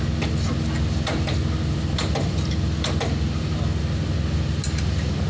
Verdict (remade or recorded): recorded